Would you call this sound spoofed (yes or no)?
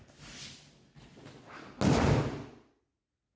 no